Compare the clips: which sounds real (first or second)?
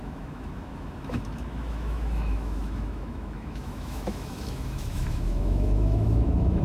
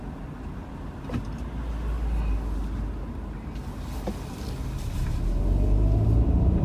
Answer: second